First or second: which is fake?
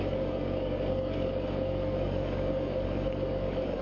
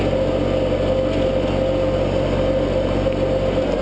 first